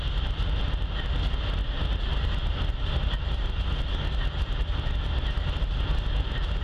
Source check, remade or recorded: recorded